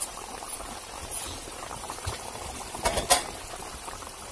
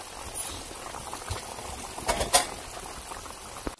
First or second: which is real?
second